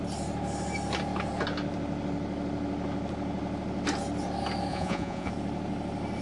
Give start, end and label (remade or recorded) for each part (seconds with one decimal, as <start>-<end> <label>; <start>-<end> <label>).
0.0-4.7 recorded; 4.7-5.3 remade; 5.3-6.2 recorded